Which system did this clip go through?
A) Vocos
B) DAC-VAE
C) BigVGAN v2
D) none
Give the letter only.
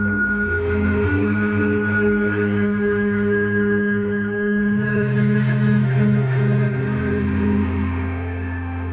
B